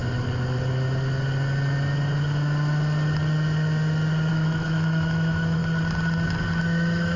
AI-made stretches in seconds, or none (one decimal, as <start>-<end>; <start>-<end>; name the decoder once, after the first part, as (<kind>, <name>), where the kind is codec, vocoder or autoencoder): 4.3-5.6 (autoencoder, DAC-VAE); 6.6-7.2